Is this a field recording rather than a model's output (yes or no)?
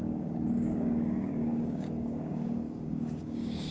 no